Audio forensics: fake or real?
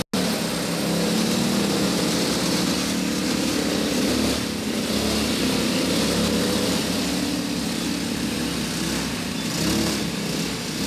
real